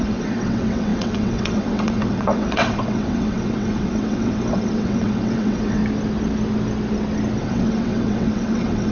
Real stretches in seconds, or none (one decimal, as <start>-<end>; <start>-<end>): 5.8-7.4